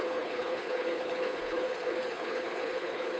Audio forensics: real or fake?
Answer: fake